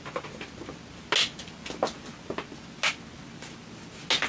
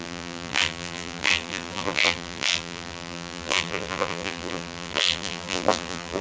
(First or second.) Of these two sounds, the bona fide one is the first